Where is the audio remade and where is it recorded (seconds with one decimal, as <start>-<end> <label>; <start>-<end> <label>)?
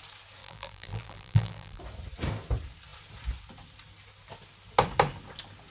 0.0-0.4 recorded; 0.4-1.8 remade; 1.8-5.7 recorded